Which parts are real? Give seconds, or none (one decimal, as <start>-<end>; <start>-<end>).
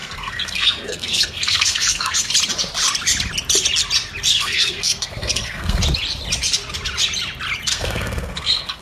2.3-4.3; 5.8-7.7